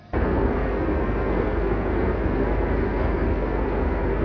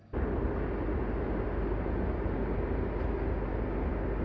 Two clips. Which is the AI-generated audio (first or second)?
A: first